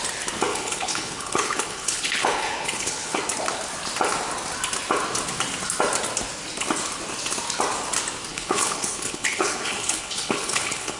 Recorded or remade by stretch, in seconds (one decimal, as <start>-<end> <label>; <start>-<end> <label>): 0.0-0.5 recorded; 0.5-3.2 remade; 3.2-8.3 recorded; 8.3-11.0 remade